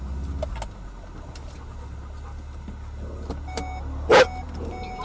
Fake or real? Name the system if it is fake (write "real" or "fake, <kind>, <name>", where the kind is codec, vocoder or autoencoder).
real